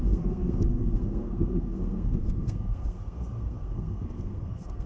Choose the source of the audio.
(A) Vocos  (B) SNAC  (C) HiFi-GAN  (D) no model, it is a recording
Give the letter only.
B